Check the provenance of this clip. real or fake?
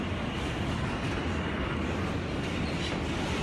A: real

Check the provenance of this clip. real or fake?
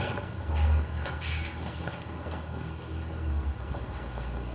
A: fake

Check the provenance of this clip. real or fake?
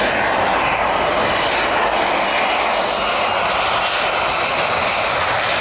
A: real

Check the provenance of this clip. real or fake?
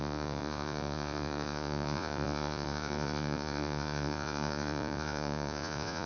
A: fake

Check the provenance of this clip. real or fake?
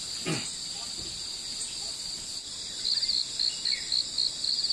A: real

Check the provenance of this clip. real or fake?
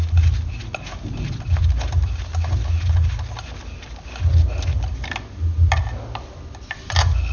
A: real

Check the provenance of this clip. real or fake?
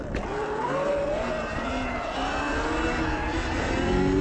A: real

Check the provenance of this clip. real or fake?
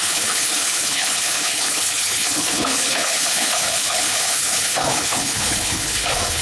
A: fake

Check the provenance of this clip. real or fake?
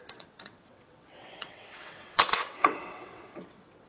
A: fake